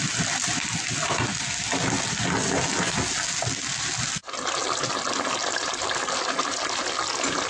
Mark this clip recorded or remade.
recorded